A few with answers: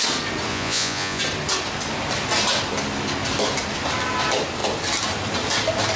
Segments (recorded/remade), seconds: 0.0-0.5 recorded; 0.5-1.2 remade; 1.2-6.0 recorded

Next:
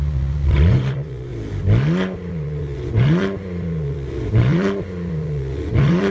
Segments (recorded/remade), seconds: 0.0-1.3 remade; 1.3-2.3 recorded; 2.3-6.1 remade

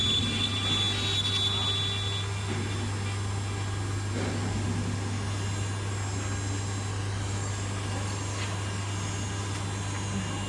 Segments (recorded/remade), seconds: 0.0-6.9 recorded; 6.9-7.5 remade; 7.5-10.5 recorded

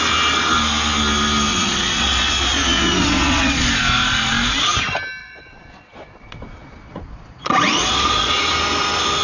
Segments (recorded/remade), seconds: 0.0-1.5 recorded; 1.5-3.7 remade; 3.7-5.2 recorded; 5.2-8.4 remade; 8.4-9.2 recorded

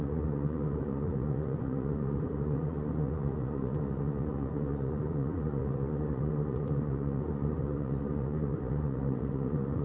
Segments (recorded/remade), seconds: 0.0-9.8 remade

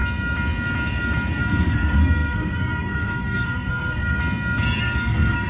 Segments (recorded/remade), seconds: 0.0-1.4 recorded; 1.4-4.2 remade; 4.2-4.8 recorded; 4.8-5.5 remade